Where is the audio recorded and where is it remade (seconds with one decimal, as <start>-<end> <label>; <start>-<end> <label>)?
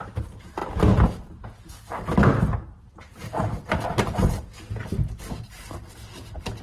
0.0-6.6 recorded